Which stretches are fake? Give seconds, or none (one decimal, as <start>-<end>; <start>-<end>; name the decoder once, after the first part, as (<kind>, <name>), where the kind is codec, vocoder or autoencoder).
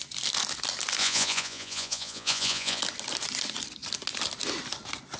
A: 1.0-2.8 (vocoder, Vocos)